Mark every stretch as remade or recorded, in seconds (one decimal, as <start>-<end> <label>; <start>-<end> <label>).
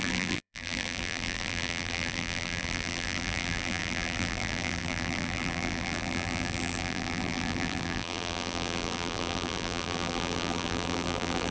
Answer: 0.0-11.5 remade